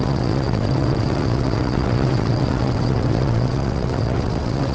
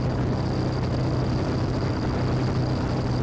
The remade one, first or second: first